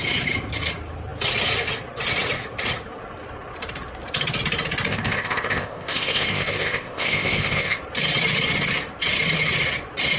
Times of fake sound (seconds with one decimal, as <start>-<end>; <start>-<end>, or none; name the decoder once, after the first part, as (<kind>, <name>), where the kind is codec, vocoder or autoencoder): 4.9-7.8 (codec, ZipCodec)